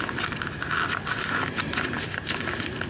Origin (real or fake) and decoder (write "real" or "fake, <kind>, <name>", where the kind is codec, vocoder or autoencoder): real